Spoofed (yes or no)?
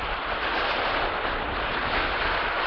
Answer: no